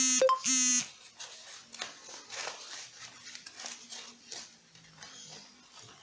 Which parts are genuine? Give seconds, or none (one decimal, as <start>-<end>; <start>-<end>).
0.0-6.0